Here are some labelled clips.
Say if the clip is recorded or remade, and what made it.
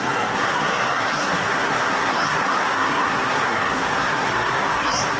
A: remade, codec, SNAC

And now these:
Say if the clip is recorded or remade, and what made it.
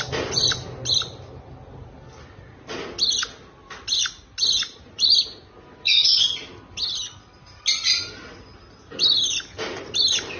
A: recorded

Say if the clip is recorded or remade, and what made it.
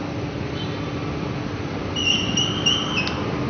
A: recorded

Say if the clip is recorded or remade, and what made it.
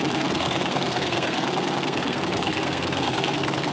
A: remade, codec, SNAC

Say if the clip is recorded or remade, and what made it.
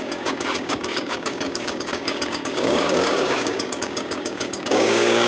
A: remade, codec, DAC